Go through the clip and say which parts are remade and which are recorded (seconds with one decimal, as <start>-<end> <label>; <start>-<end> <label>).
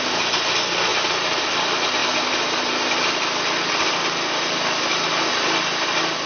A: 0.0-6.3 recorded